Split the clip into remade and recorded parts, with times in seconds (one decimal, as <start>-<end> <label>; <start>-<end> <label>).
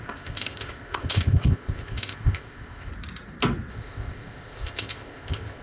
0.0-2.9 remade; 2.9-3.7 recorded; 3.7-5.6 remade